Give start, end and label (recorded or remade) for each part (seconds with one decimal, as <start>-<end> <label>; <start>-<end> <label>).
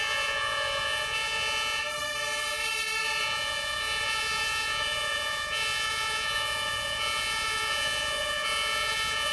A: 0.0-1.8 remade; 1.8-3.2 recorded; 3.2-9.3 remade